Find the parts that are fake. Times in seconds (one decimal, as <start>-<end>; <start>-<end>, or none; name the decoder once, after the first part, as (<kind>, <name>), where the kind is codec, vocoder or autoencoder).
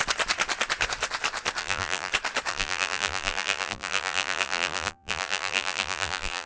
1.6-2.1 (vocoder, BigVGAN v2); 2.5-6.5